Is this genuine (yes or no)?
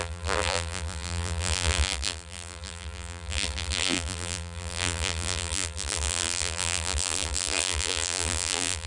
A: no